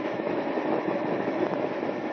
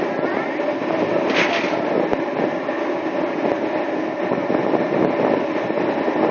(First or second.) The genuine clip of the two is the second